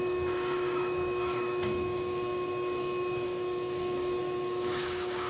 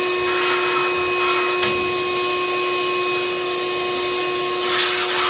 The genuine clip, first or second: second